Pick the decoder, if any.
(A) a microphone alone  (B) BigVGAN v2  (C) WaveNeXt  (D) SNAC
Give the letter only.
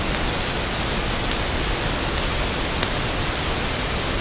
A